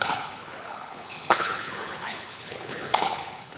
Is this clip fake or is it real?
fake